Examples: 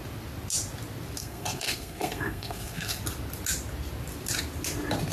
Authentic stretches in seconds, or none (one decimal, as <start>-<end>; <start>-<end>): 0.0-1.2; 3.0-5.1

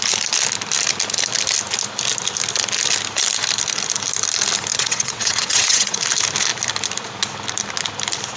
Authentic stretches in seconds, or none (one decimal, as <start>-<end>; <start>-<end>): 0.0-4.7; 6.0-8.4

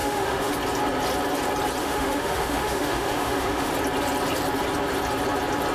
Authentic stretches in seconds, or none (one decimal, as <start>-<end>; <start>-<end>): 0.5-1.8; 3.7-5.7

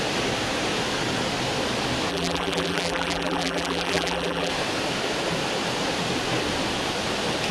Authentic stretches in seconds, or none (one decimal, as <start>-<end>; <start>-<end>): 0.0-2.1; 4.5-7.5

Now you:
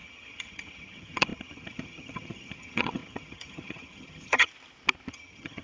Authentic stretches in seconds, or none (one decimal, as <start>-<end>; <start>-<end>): 4.5-5.1

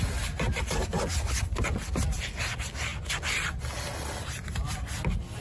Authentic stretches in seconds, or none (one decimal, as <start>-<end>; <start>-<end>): 0.0-5.4

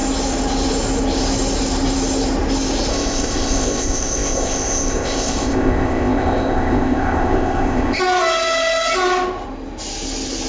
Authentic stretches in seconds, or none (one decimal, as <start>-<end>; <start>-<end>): 0.0-2.9; 8.0-10.5